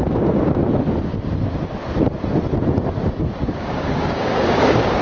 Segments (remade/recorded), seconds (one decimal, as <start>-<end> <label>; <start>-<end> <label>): 0.0-0.6 remade; 0.6-3.6 recorded; 3.6-5.0 remade